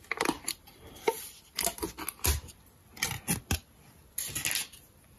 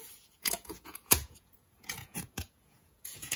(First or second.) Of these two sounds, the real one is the first